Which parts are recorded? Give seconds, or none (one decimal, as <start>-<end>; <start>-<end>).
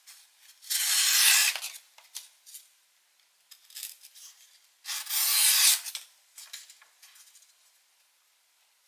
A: 0.0-8.9